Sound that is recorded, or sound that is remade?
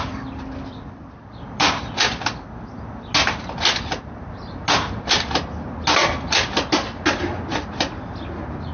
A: recorded